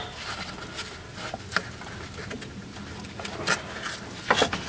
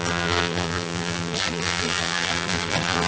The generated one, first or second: second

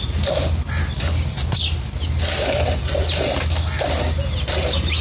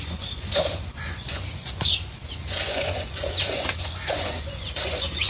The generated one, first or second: second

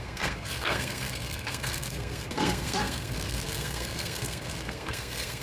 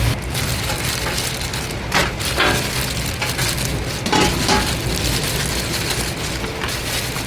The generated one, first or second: first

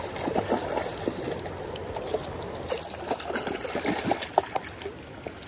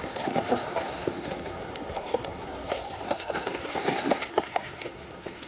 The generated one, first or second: second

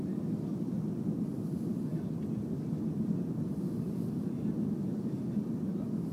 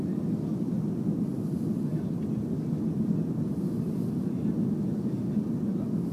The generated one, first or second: first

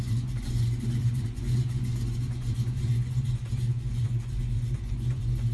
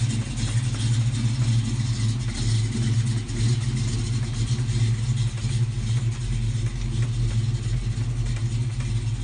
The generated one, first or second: first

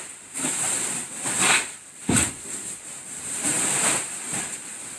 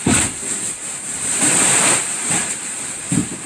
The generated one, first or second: second